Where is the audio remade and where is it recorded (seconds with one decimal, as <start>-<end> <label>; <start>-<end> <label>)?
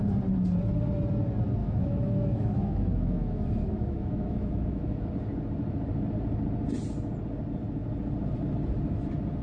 0.0-1.6 recorded; 1.6-5.1 remade; 5.1-9.4 recorded